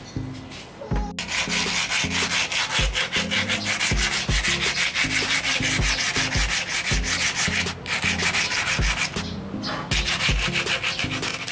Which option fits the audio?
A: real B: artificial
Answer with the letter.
A